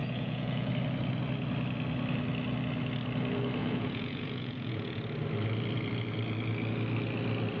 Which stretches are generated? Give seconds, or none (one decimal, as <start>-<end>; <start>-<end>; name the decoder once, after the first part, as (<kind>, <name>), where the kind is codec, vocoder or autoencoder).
0.0-0.7 (vocoder, Vocos); 3.6-5.0